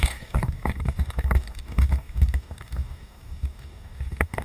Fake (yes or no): yes